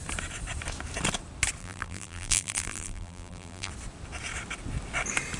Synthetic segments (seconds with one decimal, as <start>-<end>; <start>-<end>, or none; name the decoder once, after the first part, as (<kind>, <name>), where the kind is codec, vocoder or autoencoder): 1.6-3.7 (vocoder, BigVGAN v2)